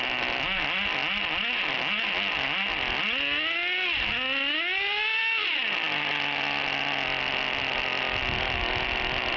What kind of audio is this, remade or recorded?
recorded